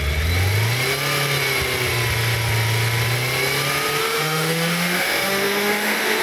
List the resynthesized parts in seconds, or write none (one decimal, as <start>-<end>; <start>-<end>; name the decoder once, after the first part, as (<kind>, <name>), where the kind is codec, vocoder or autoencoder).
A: 4.0-6.2 (autoencoder, DAC-VAE)